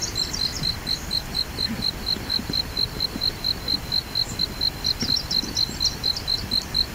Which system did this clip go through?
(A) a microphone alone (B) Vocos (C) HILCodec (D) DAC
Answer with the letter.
A